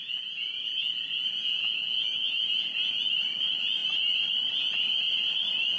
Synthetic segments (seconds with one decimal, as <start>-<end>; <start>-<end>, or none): 0.0-3.1